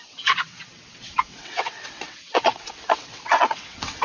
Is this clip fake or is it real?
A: fake